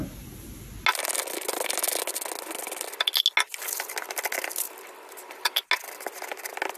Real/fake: real